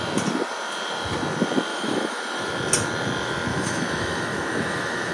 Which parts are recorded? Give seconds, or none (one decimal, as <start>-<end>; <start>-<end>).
0.0-1.7; 2.5-3.5